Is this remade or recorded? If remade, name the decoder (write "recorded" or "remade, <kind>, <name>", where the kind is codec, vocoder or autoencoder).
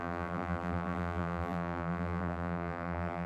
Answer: remade, vocoder, BigVGAN v2